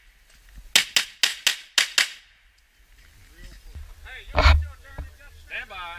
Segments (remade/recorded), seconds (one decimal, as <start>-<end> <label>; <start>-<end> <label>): 0.0-6.0 recorded